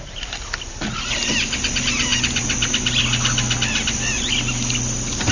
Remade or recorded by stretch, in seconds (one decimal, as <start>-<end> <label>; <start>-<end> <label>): 0.0-5.3 recorded

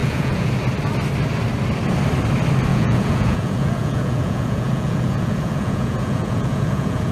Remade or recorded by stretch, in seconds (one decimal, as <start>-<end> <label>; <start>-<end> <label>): 0.0-0.5 remade; 0.5-2.7 recorded; 2.7-7.1 remade

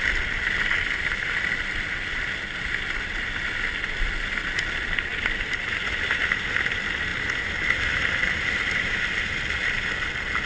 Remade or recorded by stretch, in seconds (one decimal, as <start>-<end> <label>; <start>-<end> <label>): 0.0-10.5 recorded

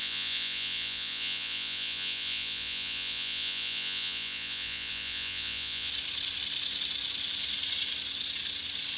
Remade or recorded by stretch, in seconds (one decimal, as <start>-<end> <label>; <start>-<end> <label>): 0.0-5.9 remade; 5.9-9.0 recorded

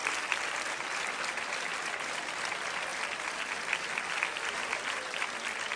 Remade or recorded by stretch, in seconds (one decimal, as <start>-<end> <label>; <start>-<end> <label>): 0.0-5.8 recorded

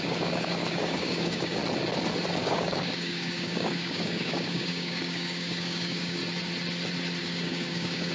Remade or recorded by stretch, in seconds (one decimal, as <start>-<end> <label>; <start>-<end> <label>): 0.0-1.6 remade; 1.6-2.4 recorded; 2.4-6.2 remade; 6.2-7.2 recorded; 7.2-8.1 remade

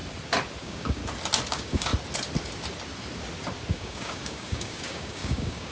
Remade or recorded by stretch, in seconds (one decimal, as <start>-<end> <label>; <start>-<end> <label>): 0.0-0.6 recorded; 0.6-1.0 remade; 1.0-1.5 recorded; 1.5-1.9 remade; 1.9-3.7 recorded; 3.7-5.7 remade